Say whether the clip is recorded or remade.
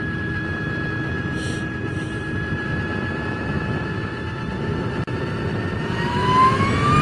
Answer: recorded